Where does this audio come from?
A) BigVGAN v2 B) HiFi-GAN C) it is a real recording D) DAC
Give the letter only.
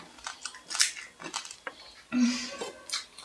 C